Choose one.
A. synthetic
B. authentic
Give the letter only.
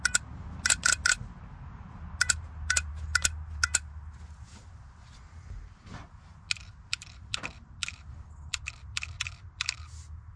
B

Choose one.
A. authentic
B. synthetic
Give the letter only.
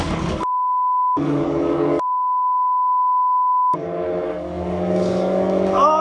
B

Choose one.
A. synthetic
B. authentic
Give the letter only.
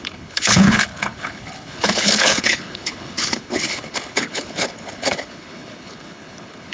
A